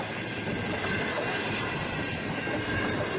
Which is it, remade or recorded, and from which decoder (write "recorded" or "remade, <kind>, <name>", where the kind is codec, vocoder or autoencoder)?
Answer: recorded